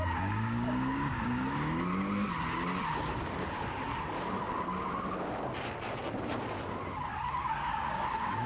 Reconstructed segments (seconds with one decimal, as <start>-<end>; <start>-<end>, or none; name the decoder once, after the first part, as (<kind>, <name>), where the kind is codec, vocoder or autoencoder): 0.0-1.9 (codec, DAC); 5.6-6.3; 7.2-8.5